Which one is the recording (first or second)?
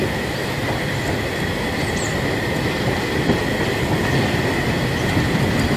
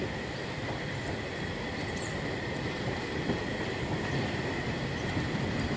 first